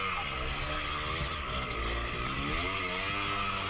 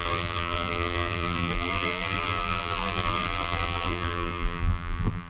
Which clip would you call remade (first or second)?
second